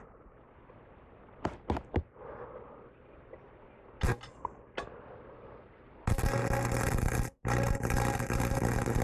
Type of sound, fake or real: real